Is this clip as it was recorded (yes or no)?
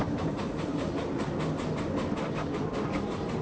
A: yes